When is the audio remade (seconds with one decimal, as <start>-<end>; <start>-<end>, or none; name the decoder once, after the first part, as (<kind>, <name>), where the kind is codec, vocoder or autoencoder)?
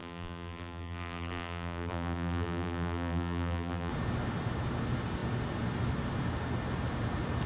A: 0.0-3.9 (vocoder, BigVGAN v2)